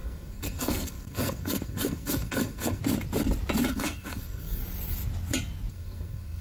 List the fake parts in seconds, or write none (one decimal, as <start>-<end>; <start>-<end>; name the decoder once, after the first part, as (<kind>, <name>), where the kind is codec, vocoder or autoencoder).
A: 0.0-2.8 (codec, SNAC); 3.7-4.6; 5.7-6.4